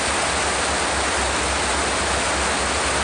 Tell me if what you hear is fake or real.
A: real